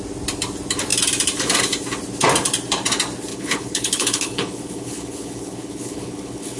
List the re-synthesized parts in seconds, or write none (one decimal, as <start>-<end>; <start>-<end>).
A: 3.3-6.6